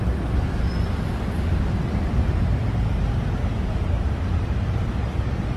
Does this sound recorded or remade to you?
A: recorded